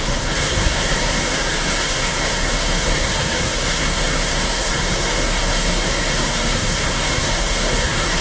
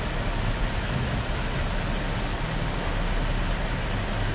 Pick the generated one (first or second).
first